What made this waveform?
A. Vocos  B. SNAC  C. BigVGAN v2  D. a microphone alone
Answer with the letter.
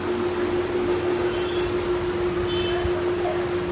D